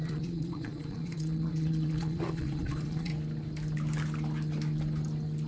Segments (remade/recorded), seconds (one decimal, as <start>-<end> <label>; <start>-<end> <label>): 0.0-3.1 remade; 3.1-5.5 recorded